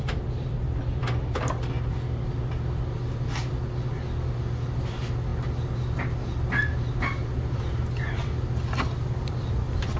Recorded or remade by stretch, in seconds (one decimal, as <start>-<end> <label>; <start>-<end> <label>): 0.0-10.0 recorded